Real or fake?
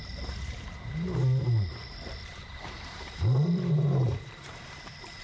fake